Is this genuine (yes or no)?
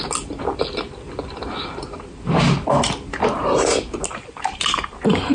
yes